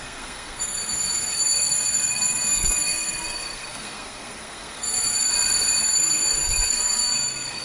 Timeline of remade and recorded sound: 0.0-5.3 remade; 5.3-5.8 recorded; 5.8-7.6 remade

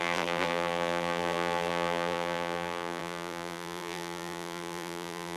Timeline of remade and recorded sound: 0.0-5.4 remade

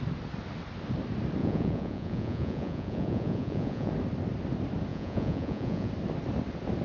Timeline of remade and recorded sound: 0.0-1.4 recorded; 1.4-3.9 remade; 3.9-4.9 recorded; 4.9-5.9 remade; 5.9-6.8 recorded

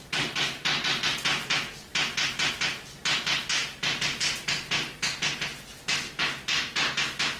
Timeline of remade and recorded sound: 0.0-7.4 recorded

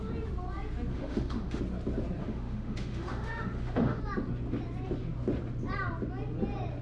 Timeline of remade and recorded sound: 0.0-0.9 recorded; 0.9-1.6 remade; 1.6-2.2 recorded; 2.2-4.0 remade; 4.0-6.8 recorded

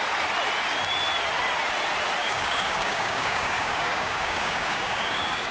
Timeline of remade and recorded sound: 0.0-2.2 recorded; 2.2-5.5 remade